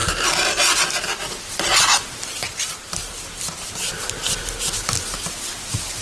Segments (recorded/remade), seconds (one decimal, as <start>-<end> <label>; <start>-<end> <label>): 0.0-6.0 recorded